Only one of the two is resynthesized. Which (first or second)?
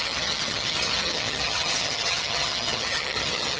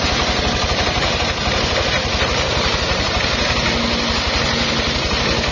first